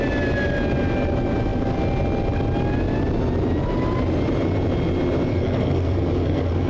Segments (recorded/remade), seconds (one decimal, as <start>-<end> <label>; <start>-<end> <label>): 0.0-5.3 recorded; 5.3-6.7 remade